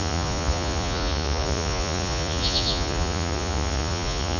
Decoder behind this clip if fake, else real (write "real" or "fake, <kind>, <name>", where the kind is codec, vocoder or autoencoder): fake, vocoder, Vocos